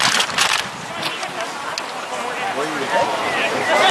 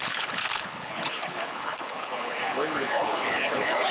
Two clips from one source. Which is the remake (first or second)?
second